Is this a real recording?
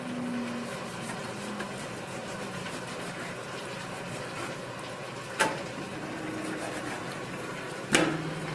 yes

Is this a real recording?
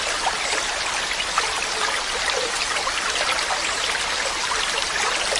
yes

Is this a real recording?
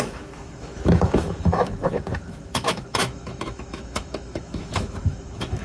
no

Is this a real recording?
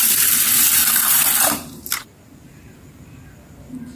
no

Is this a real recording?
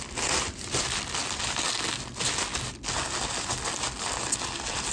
yes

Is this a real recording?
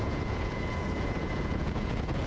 no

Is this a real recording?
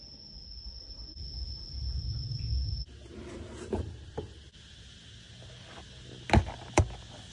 yes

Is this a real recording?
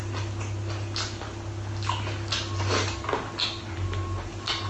yes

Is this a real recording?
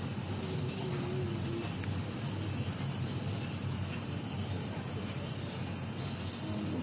yes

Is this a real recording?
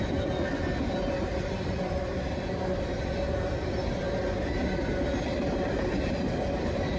yes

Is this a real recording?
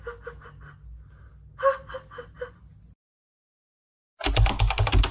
yes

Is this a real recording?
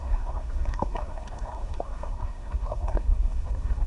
no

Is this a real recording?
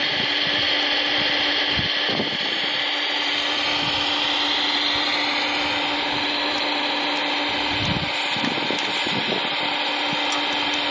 yes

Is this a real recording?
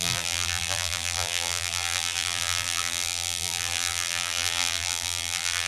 no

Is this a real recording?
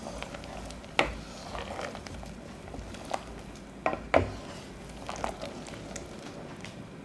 yes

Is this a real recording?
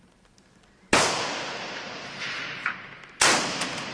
yes